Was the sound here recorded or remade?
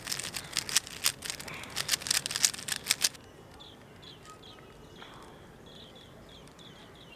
recorded